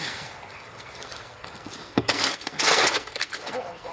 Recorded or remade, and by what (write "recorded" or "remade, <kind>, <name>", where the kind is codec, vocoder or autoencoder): remade, codec, SNAC